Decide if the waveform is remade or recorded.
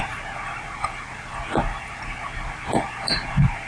recorded